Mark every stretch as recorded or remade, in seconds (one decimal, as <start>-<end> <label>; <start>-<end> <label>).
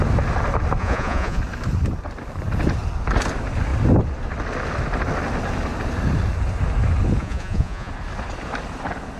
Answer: 0.0-0.8 recorded; 0.8-1.4 remade; 1.4-7.2 recorded; 7.2-7.9 remade; 7.9-9.2 recorded